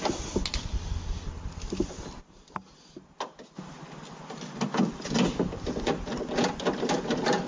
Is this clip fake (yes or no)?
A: no